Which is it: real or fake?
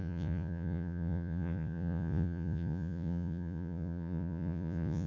fake